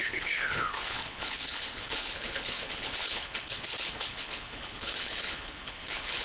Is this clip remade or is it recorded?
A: remade